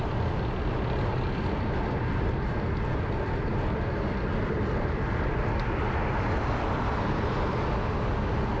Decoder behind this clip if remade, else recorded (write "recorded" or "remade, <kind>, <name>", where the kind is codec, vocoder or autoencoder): recorded